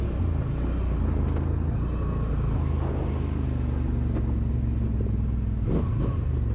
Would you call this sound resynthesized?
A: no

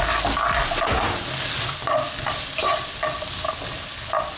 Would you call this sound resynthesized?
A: no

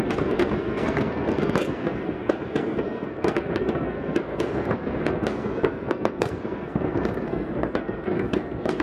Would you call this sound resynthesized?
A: yes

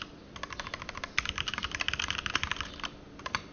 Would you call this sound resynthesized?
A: no